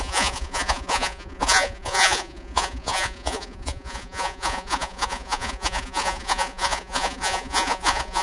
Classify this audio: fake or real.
fake